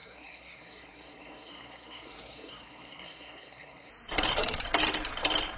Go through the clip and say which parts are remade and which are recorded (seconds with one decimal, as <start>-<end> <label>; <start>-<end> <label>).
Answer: 0.0-3.9 remade; 3.9-5.6 recorded